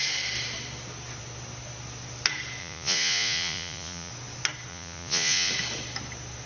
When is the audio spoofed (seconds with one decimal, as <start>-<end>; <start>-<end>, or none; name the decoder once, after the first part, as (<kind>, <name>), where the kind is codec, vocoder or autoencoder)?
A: 2.6-4.1 (vocoder, Vocos); 4.7-5.5